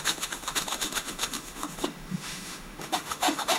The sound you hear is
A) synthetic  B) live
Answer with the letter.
A